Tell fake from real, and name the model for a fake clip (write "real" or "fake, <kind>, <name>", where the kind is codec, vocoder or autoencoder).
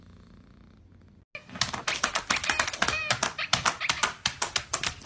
real